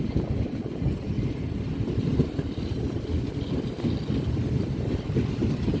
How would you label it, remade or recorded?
recorded